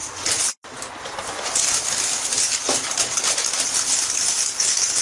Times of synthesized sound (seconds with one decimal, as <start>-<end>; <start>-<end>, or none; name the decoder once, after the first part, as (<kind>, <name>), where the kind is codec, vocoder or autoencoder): none

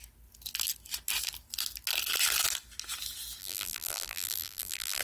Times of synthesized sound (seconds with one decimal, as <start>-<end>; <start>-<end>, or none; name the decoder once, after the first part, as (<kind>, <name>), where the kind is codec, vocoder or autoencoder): 3.4-5.0 (vocoder, BigVGAN v2)

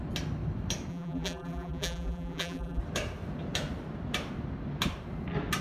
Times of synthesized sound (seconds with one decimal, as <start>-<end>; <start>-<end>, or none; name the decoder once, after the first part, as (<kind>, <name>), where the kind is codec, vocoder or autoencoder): 0.9-2.8 (vocoder, BigVGAN v2)

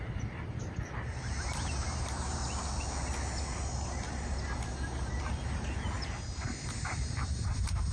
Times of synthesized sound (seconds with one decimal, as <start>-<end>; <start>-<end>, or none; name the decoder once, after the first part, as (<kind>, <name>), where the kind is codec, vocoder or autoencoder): 0.0-2.4 (vocoder, BigVGAN v2); 5.3-7.9

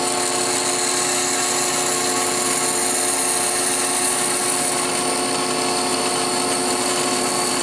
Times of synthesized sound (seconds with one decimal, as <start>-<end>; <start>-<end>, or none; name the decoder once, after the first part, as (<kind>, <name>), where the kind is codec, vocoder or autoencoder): none